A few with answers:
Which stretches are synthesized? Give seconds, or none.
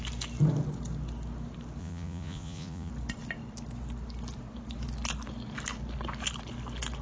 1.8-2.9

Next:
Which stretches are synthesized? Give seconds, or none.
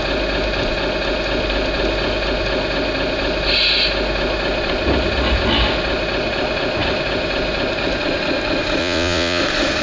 8.8-9.4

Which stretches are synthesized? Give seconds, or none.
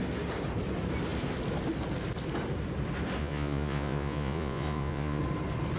3.2-5.2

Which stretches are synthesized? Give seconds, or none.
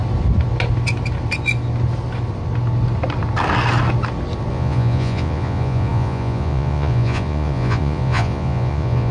4.5-9.1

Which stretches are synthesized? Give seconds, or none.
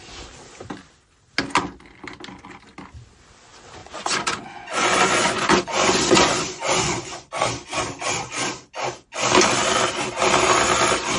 3.8-7.3